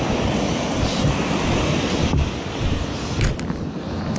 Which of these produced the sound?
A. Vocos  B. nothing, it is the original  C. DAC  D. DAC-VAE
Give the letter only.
B